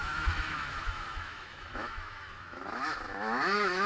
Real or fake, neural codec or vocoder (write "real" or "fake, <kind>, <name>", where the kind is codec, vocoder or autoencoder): fake, autoencoder, DAC-VAE